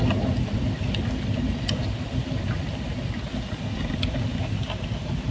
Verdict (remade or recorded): recorded